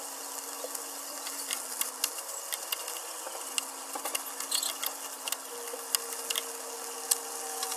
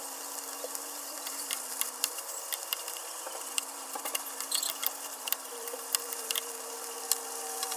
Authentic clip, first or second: first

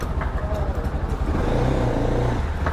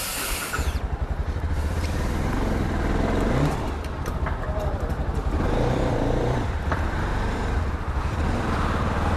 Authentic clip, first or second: first